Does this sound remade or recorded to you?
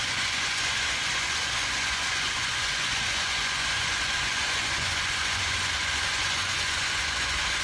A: remade